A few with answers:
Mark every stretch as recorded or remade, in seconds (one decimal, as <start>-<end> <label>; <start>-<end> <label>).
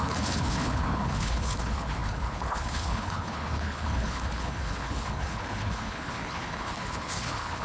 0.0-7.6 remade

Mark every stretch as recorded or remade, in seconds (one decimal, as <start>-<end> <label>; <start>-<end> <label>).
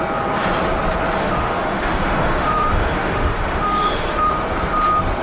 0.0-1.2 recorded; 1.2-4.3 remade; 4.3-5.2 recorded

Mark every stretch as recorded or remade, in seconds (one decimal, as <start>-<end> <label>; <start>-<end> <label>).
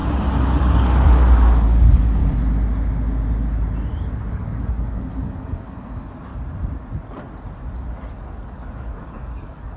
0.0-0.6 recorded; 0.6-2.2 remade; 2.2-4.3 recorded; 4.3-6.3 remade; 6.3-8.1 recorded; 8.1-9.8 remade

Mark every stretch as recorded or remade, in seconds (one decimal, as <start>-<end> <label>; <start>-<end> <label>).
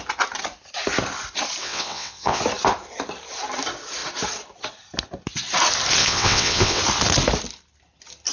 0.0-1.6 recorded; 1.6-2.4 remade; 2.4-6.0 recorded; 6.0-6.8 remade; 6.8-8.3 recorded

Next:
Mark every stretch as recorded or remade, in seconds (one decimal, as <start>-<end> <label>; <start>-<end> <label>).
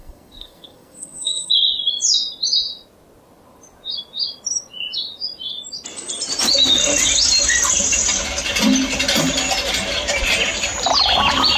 0.0-1.5 remade; 1.5-11.6 recorded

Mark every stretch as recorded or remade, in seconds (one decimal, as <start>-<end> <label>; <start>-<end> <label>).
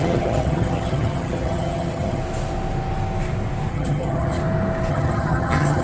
0.0-2.2 remade; 2.2-3.7 recorded; 3.7-4.4 remade; 4.4-4.9 recorded; 4.9-5.8 remade